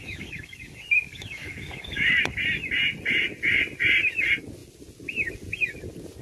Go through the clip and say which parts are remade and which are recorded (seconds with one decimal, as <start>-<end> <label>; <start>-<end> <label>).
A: 0.0-2.1 remade; 2.1-6.2 recorded